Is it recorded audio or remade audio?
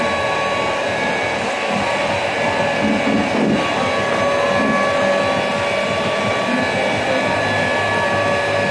recorded